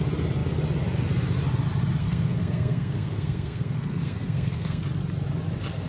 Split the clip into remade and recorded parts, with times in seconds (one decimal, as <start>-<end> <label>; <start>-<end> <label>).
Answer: 0.0-2.0 recorded; 2.0-4.8 remade; 4.8-5.9 recorded